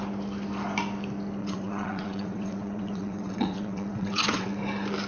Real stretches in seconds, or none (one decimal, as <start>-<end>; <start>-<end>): 0.0-1.4; 4.5-5.1